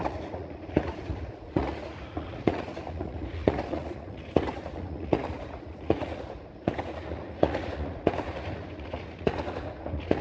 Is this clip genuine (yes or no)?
no